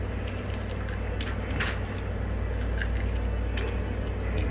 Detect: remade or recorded recorded